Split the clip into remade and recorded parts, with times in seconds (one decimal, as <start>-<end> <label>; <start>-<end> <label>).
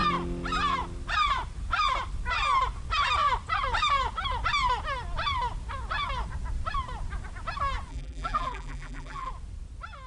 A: 0.0-7.9 recorded; 7.9-9.3 remade; 9.3-10.1 recorded